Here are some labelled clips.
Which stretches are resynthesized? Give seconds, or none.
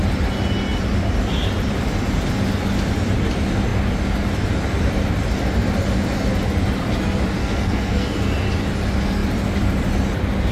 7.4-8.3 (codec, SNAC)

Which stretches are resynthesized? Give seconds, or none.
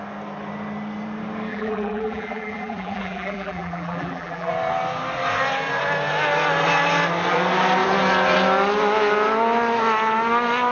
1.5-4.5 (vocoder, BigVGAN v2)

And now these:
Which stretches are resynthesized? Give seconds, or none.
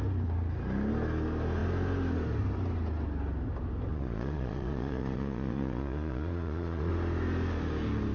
3.9-6.9 (vocoder, Vocos)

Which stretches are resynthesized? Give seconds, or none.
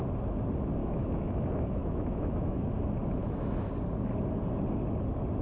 0.8-2.7 (autoencoder, DAC-VAE); 3.2-3.7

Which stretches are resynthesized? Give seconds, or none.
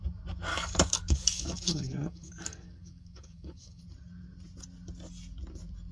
0.5-3.8 (codec, DAC)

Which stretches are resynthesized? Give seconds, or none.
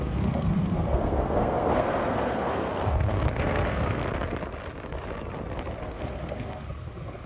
0.0-4.0 (codec, SNAC); 5.8-7.3